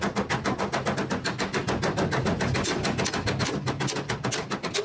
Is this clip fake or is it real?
real